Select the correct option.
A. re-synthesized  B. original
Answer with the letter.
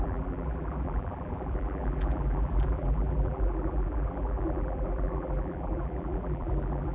A